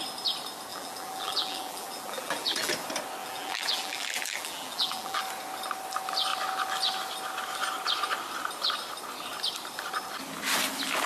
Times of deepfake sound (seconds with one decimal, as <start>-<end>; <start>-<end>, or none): 0.7-2.7; 3.2-5.2